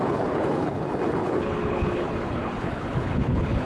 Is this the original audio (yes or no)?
no